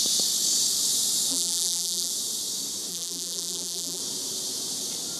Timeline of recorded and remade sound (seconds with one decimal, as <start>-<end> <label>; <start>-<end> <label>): 0.0-1.3 recorded; 1.3-2.1 remade; 2.1-2.9 recorded; 2.9-4.0 remade; 4.0-5.2 recorded